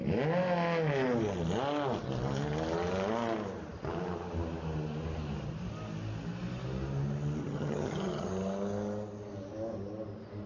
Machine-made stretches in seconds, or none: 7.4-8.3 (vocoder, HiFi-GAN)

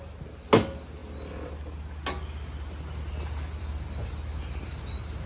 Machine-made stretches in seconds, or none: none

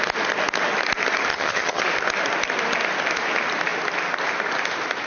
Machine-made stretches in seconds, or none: 1.3-1.8 (vocoder, HiFi-GAN)